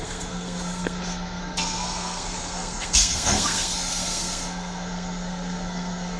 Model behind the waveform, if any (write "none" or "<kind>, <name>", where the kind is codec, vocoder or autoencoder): codec, SNAC